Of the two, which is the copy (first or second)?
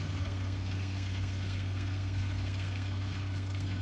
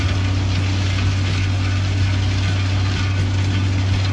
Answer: first